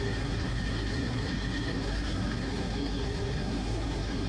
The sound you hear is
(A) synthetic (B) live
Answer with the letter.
A